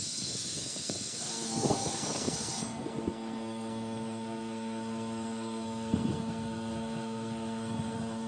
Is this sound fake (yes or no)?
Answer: yes